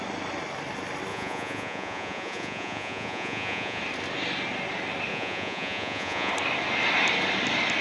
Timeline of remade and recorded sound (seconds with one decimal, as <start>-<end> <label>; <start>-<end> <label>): 0.0-1.1 recorded; 1.1-3.8 remade; 3.8-5.1 recorded; 5.1-6.3 remade; 6.3-7.8 recorded